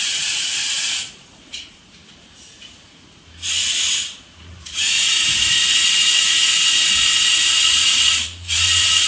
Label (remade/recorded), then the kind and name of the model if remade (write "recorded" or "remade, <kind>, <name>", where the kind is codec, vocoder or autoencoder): remade, vocoder, Vocos